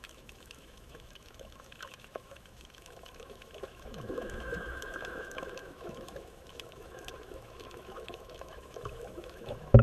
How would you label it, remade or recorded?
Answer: remade